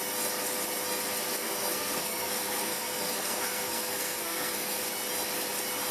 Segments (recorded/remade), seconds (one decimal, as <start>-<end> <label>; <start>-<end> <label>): 0.0-1.3 recorded; 1.3-4.8 remade; 4.8-5.9 recorded